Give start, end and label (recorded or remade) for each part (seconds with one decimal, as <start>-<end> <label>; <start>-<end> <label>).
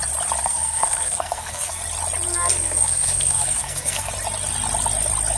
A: 0.0-0.4 recorded; 0.4-1.8 remade; 1.8-2.3 recorded; 2.3-4.1 remade; 4.1-5.4 recorded